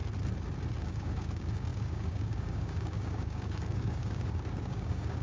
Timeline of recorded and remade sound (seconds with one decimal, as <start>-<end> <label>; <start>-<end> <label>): 0.0-0.8 recorded; 0.8-5.2 remade